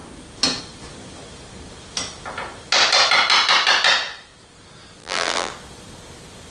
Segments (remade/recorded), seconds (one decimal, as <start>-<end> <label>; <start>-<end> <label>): 0.0-5.0 recorded; 5.0-5.5 remade; 5.5-6.5 recorded